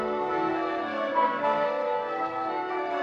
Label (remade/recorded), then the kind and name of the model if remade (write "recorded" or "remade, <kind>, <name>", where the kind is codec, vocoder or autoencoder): remade, codec, SNAC